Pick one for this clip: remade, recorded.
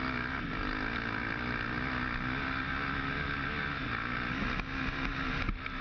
recorded